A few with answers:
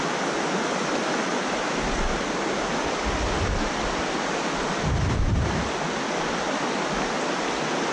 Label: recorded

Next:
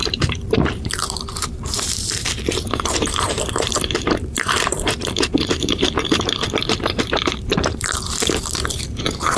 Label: remade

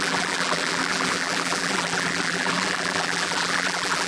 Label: remade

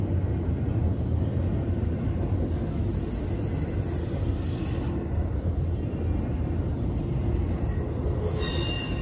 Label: recorded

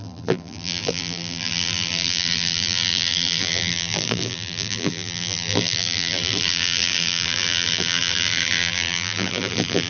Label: remade